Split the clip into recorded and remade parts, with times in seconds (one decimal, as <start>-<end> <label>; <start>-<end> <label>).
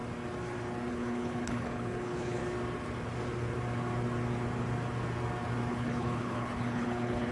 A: 0.0-0.9 recorded; 0.9-2.4 remade; 2.4-5.7 recorded; 5.7-7.3 remade